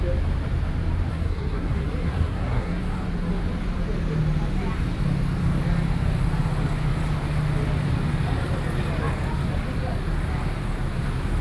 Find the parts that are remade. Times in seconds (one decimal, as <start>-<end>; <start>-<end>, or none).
1.1-2.8